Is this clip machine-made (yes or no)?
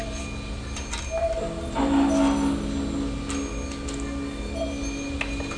no